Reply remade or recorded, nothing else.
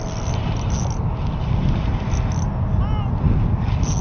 recorded